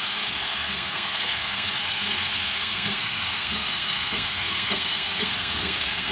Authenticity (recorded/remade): remade